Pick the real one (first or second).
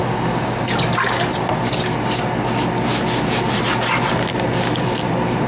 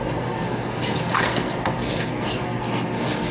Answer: first